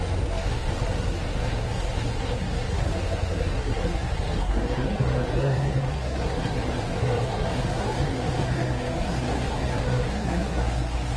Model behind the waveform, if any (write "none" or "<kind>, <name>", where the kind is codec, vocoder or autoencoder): codec, SNAC